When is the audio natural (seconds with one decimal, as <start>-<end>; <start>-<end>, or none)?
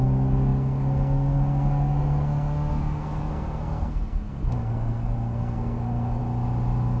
6.2-7.0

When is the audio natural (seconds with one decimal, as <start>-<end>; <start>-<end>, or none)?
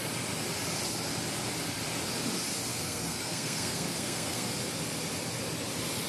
0.0-2.7; 4.5-6.1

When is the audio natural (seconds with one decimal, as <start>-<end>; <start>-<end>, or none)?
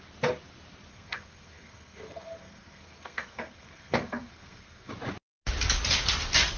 0.0-0.9; 4.9-6.6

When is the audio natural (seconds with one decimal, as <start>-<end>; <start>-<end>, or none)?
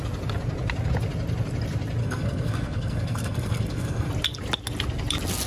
0.0-2.0; 4.1-5.5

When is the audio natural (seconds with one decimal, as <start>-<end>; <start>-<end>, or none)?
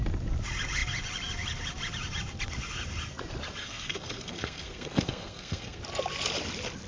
0.0-3.6; 5.8-6.9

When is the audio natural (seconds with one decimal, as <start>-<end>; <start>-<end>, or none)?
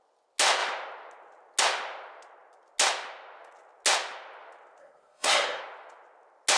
0.0-4.8; 5.6-6.6